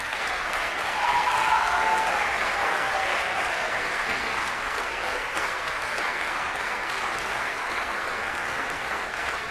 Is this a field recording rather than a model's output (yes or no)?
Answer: no